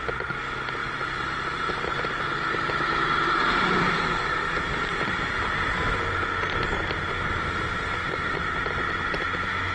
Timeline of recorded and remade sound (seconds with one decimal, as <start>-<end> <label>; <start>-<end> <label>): 0.0-0.8 recorded; 0.8-5.7 remade; 5.7-9.7 recorded